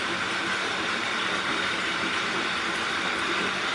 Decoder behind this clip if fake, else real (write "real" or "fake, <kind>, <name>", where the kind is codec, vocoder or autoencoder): fake, vocoder, BigVGAN v2